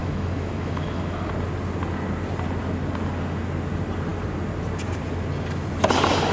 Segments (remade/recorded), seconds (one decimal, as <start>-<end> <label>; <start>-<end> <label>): 0.0-1.3 remade; 1.3-6.3 recorded

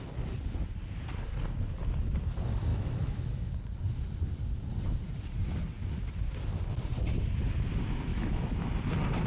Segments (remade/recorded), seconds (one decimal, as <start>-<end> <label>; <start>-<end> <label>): 0.0-2.7 recorded; 2.7-3.5 remade; 3.5-8.1 recorded; 8.1-8.7 remade; 8.7-9.3 recorded

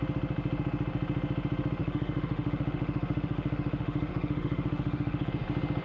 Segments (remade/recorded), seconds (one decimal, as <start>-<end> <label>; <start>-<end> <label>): 0.0-1.8 recorded; 1.8-5.3 remade; 5.3-5.8 recorded

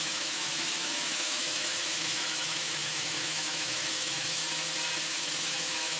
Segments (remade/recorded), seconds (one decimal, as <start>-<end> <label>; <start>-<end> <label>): 0.0-4.4 remade; 4.4-5.1 recorded; 5.1-6.0 remade